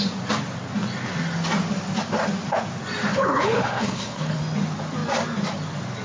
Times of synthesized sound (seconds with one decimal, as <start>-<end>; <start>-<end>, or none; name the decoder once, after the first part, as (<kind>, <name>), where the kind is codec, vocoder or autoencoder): 3.1-4.4 (codec, HILCodec)